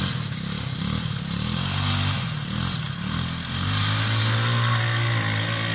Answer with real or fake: real